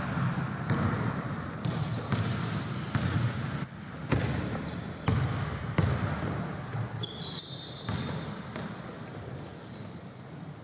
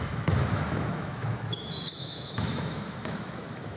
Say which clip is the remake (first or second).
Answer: second